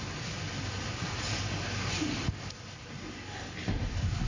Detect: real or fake real